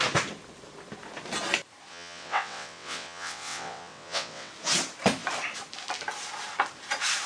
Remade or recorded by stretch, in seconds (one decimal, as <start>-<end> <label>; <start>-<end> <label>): 0.0-1.9 recorded; 1.9-4.5 remade; 4.5-7.3 recorded